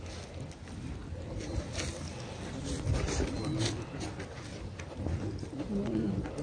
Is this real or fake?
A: real